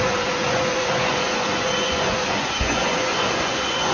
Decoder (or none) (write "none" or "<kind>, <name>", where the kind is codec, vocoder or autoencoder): vocoder, Vocos